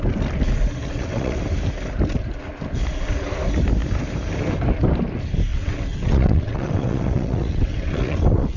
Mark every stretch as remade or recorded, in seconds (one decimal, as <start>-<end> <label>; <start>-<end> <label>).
0.0-0.8 recorded; 0.8-1.4 remade; 1.4-5.5 recorded; 5.5-8.6 remade